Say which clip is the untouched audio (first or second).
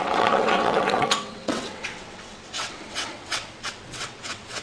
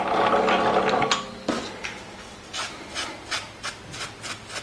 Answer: second